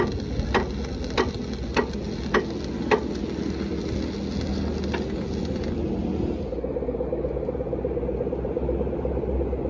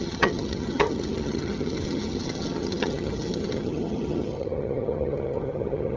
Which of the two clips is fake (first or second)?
second